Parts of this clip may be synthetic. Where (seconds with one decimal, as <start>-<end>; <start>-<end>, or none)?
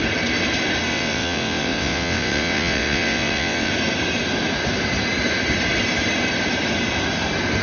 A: 0.9-3.7